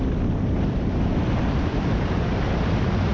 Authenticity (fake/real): fake